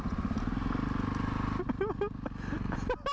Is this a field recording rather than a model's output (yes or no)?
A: yes